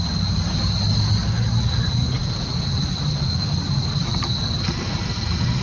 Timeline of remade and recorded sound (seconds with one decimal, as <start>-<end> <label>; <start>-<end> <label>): 0.0-5.6 recorded